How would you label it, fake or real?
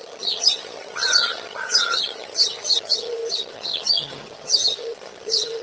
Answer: fake